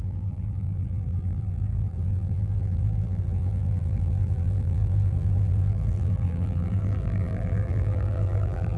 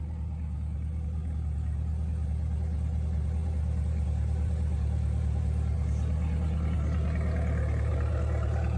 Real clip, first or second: second